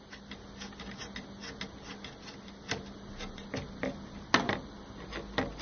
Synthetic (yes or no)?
no